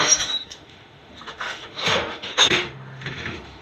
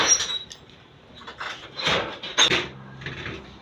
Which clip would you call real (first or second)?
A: second